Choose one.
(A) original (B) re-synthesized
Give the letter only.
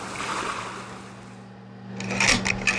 A